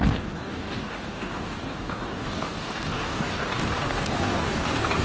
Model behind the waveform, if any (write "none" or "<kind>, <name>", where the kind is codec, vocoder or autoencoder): codec, DAC